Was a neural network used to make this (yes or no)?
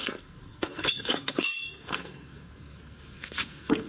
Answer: yes